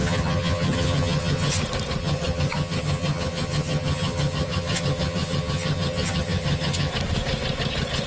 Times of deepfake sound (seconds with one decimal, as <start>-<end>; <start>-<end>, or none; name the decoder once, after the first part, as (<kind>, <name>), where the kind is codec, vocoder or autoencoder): 0.0-1.6 (vocoder, HiFi-GAN); 2.0-6.9